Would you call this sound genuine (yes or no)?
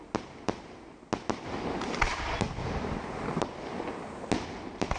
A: yes